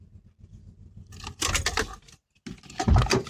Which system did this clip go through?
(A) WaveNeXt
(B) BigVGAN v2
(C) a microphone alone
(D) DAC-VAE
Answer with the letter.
C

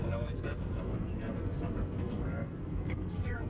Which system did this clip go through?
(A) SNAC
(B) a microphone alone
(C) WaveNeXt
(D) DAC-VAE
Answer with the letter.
A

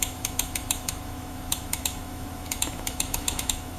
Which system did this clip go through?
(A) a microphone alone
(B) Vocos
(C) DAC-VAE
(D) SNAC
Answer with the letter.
C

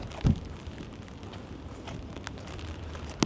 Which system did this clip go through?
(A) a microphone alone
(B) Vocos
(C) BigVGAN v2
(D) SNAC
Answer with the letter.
A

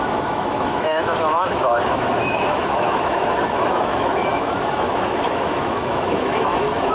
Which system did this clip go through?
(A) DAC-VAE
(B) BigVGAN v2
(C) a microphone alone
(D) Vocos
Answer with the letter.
A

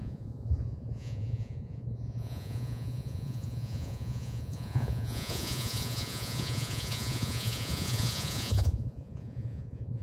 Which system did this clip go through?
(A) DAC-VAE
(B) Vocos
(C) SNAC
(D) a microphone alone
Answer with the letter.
B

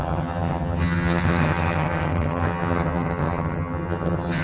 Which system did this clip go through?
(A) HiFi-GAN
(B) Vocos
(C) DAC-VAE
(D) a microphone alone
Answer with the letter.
A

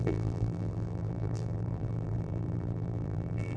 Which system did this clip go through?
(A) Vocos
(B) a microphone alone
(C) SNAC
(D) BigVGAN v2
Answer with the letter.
D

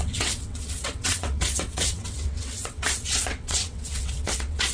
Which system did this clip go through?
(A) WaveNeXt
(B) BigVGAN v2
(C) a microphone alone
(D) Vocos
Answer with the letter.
A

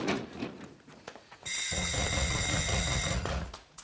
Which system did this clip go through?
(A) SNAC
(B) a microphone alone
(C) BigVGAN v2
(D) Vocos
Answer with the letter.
D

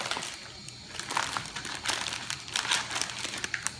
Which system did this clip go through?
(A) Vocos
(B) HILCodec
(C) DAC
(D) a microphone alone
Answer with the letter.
D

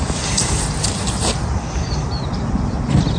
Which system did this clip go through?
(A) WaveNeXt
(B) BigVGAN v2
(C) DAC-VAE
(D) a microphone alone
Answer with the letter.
D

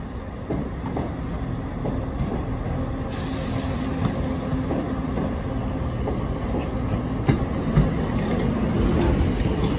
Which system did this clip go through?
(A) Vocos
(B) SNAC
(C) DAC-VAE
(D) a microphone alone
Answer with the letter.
D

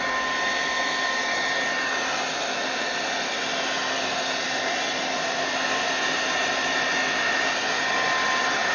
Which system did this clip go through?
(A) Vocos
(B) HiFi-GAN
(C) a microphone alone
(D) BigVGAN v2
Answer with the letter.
C